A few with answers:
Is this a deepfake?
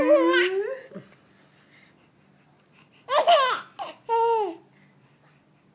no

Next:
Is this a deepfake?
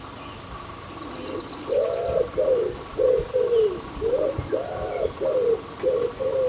no